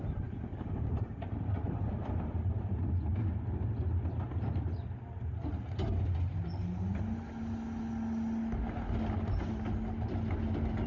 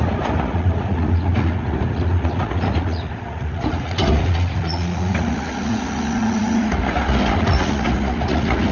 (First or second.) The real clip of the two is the first